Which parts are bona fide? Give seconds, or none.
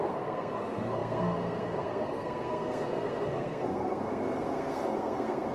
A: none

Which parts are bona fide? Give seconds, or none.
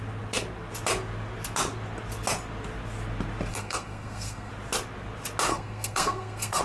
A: 0.0-3.5; 4.5-5.5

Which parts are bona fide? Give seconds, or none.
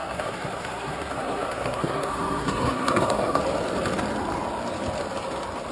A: 3.4-5.7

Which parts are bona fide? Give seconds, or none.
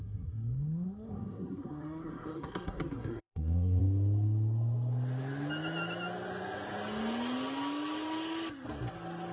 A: 3.8-9.3